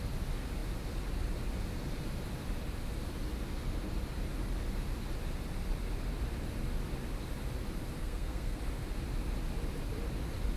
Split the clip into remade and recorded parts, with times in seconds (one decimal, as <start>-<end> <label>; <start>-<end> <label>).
0.0-8.0 recorded; 8.0-8.6 remade; 8.6-10.6 recorded